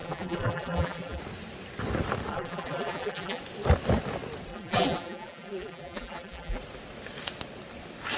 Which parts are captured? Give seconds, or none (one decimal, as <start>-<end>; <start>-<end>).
1.2-2.3; 3.4-4.5; 6.6-8.2